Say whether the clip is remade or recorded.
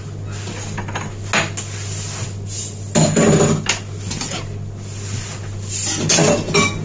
recorded